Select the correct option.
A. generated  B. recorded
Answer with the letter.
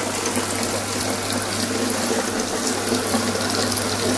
B